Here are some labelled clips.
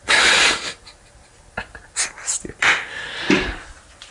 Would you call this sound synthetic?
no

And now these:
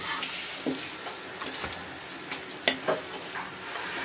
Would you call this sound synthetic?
no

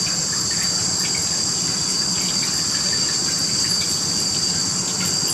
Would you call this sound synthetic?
no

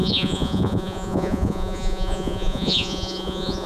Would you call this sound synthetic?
yes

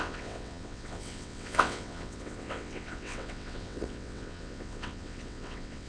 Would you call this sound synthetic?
yes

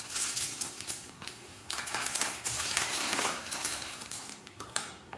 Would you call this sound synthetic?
yes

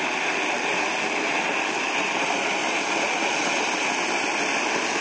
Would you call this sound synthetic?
no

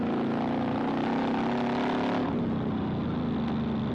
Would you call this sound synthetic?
no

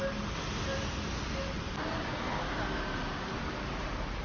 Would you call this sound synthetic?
no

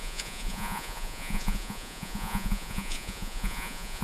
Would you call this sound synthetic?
yes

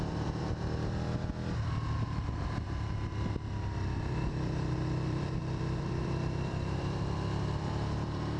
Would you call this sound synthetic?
yes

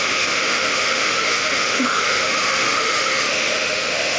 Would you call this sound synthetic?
yes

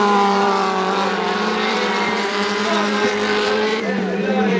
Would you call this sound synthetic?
yes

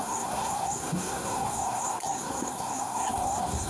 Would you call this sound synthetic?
yes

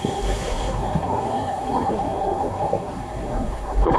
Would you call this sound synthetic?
yes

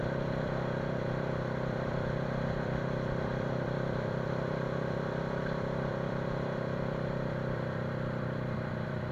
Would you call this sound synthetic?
yes